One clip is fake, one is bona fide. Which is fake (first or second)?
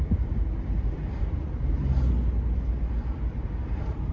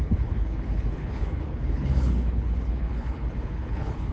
second